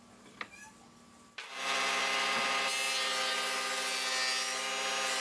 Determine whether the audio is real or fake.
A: real